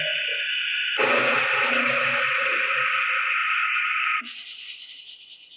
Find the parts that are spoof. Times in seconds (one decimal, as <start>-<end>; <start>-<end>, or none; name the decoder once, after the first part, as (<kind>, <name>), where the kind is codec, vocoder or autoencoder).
0.7-1.4 (vocoder, BigVGAN v2); 3.4-4.9